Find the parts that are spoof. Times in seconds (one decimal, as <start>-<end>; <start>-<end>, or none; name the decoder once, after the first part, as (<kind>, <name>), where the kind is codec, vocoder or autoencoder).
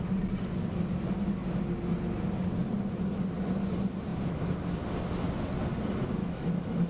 6.2-6.9 (autoencoder, DAC-VAE)